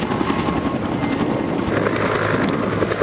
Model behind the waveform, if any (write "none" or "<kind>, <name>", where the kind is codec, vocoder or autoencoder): none